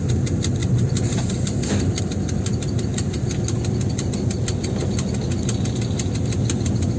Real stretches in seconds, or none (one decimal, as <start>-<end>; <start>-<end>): 0.0-0.6; 2.0-7.0

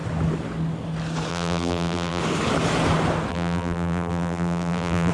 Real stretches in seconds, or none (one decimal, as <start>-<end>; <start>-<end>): 0.0-1.3; 2.2-3.3

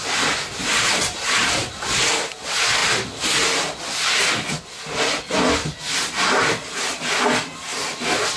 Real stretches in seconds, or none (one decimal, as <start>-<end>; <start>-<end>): 0.0-0.6; 2.0-8.4